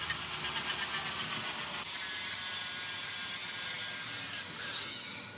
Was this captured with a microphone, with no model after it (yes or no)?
yes